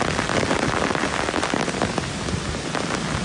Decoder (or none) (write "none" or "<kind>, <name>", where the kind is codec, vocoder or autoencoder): none